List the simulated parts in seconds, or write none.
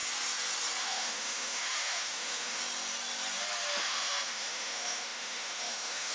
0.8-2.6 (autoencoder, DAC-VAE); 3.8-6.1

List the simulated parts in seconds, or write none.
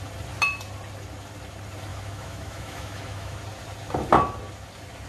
1.9-3.4 (autoencoder, DAC-VAE)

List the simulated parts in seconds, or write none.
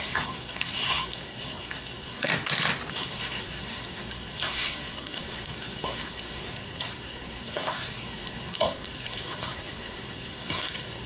0.0-2.3 (codec, SNAC); 2.9-11.1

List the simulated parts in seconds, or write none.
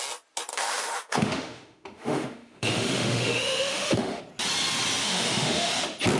0.5-4.2 (autoencoder, DAC-VAE); 5.0-5.7